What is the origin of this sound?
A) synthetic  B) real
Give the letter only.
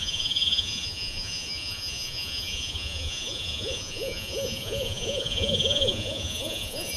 A